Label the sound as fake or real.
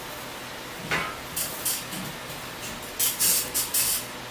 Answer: real